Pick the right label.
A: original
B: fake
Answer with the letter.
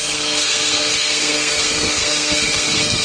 B